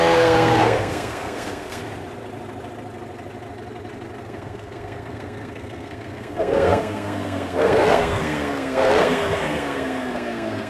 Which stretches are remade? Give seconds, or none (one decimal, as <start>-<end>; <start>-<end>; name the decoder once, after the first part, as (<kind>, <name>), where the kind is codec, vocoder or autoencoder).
0.0-1.8 (codec, SNAC); 4.2-10.7